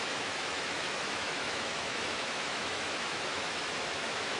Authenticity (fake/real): fake